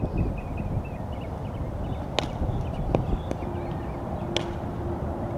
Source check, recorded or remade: recorded